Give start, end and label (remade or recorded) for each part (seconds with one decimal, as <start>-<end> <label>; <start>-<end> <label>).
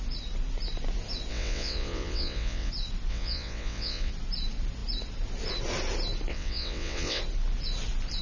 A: 0.0-1.3 recorded; 1.3-2.7 remade; 2.7-3.1 recorded; 3.1-4.1 remade; 4.1-6.3 recorded; 6.3-7.2 remade; 7.2-8.2 recorded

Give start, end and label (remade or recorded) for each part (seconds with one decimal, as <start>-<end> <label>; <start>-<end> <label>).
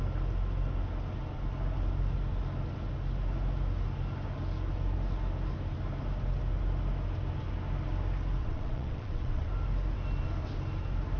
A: 0.0-8.4 recorded; 8.4-9.5 remade; 9.5-11.2 recorded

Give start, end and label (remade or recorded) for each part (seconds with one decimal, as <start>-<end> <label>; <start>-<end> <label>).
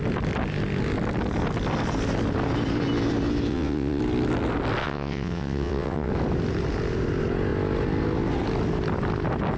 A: 0.0-3.5 recorded; 3.5-4.0 remade; 4.0-4.8 recorded; 4.8-6.1 remade; 6.1-9.6 recorded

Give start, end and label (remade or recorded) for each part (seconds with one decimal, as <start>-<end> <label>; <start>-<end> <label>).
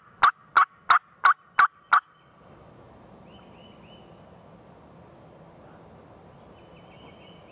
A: 0.0-7.5 recorded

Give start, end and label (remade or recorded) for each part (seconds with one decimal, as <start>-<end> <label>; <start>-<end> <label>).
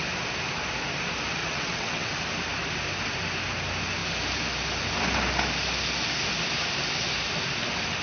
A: 0.0-1.4 recorded; 1.4-2.1 remade; 2.1-8.0 recorded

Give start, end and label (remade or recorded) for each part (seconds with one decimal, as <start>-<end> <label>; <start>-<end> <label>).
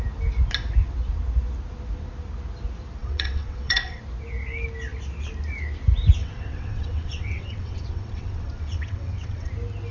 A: 0.0-3.0 recorded; 3.0-4.0 remade; 4.0-6.2 recorded; 6.2-9.5 remade; 9.5-9.9 recorded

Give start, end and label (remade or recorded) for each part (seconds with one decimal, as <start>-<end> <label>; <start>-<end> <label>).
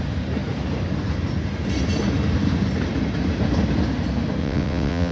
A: 0.0-4.4 recorded; 4.4-5.1 remade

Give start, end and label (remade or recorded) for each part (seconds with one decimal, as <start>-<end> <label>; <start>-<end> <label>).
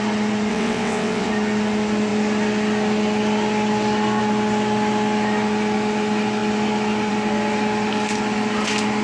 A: 0.0-0.5 recorded; 0.5-1.3 remade; 1.3-9.0 recorded